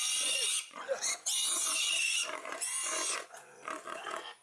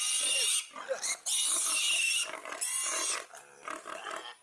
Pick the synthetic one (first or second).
first